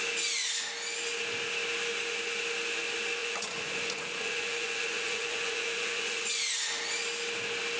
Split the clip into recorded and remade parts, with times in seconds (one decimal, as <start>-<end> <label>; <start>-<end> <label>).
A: 0.0-3.2 recorded; 3.2-6.5 remade; 6.5-7.8 recorded